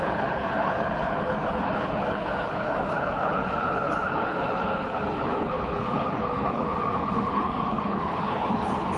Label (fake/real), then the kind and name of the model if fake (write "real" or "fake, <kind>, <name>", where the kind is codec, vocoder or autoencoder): fake, codec, HILCodec